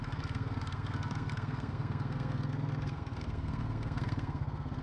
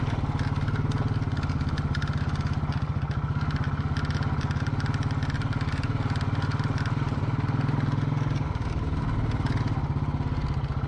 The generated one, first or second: first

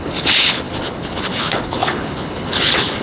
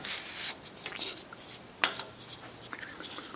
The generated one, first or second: first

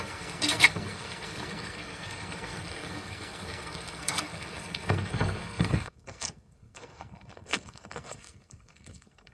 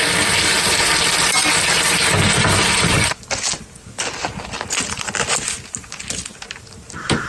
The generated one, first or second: first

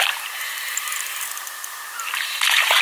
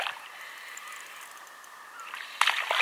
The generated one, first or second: first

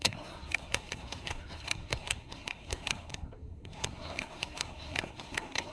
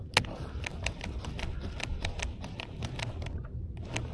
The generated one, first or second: first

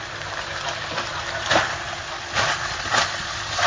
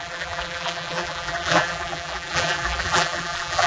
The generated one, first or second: second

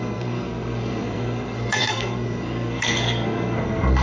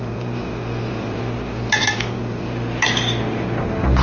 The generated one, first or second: first